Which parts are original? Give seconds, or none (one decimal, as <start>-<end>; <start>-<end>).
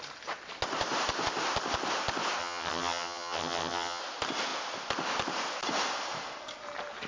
0.0-2.4; 4.0-7.1